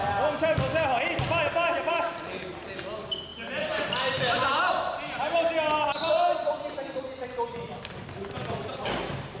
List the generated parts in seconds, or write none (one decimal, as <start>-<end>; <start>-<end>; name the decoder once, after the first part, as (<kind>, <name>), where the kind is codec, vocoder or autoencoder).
3.3-7.0 (vocoder, BigVGAN v2)